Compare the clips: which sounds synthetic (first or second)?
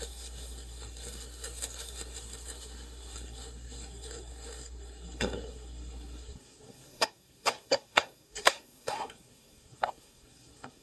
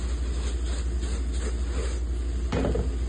first